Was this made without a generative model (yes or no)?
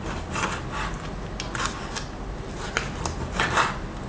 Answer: yes